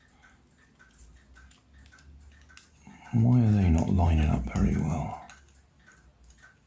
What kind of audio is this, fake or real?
real